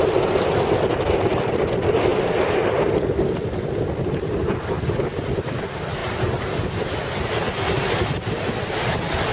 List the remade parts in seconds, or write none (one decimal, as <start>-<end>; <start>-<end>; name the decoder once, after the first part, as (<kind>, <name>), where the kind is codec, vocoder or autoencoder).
none